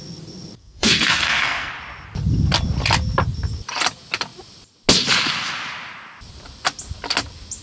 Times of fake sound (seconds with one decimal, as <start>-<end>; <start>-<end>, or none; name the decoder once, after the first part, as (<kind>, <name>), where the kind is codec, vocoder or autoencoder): 0.6-1.7 (codec, SNAC)